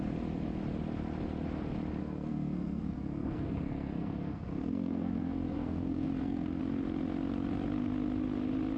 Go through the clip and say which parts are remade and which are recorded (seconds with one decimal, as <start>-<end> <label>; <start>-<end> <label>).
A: 0.0-2.0 recorded; 2.0-6.6 remade; 6.6-8.8 recorded